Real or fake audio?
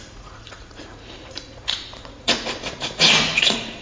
fake